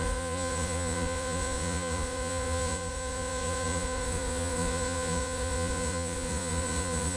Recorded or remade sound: remade